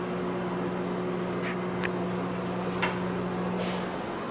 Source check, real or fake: real